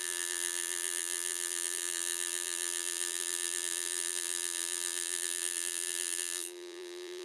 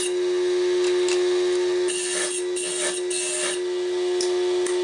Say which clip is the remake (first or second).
first